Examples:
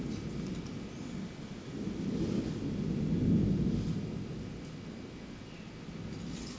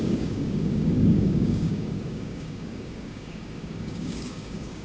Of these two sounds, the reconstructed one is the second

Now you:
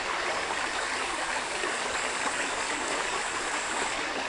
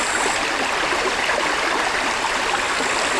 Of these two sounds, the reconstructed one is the first